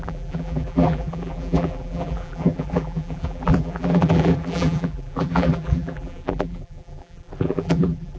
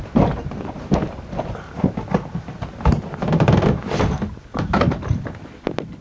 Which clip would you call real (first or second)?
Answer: second